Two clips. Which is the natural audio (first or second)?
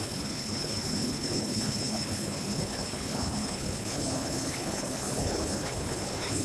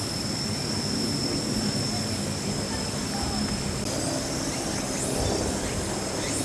second